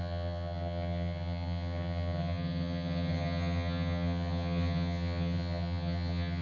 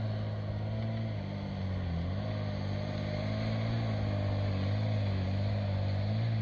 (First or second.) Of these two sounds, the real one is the second